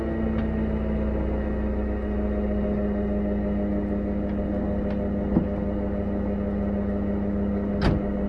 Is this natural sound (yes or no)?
yes